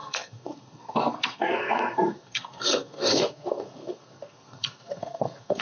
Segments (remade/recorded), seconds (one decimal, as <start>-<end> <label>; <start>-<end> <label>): 0.0-5.6 remade